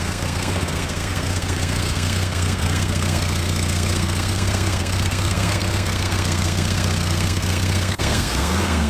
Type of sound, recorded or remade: remade